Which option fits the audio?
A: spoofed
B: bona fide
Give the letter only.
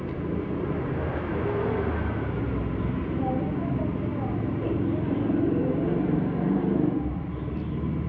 B